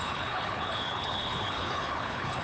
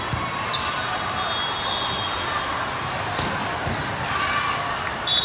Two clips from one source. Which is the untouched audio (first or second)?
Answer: second